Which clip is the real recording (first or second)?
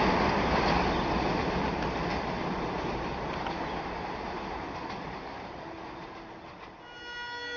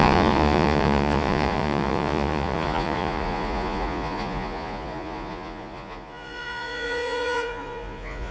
first